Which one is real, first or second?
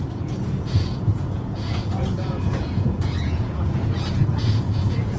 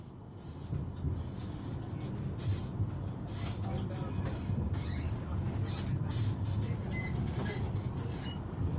second